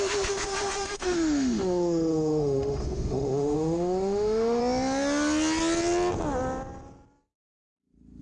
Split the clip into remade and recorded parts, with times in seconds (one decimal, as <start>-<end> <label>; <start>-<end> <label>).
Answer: 0.0-4.6 remade; 4.6-8.2 recorded